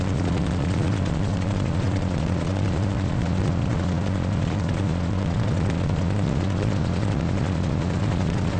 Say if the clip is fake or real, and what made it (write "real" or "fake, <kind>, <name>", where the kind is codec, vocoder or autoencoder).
fake, vocoder, Vocos